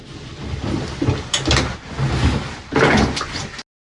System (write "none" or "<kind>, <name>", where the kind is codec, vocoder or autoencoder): none